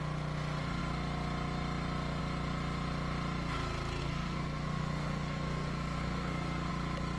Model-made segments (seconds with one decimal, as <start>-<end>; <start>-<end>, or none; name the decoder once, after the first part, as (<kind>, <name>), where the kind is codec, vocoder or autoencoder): 4.0-6.7 (codec, SNAC)